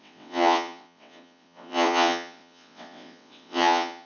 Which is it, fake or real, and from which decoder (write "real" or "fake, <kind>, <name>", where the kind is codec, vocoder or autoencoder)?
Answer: fake, vocoder, WaveNeXt